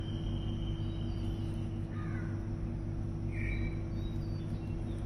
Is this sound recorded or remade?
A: recorded